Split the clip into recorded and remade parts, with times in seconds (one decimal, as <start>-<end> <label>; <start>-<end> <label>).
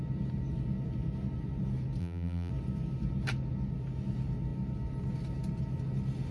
0.0-2.0 recorded; 2.0-2.5 remade; 2.5-6.3 recorded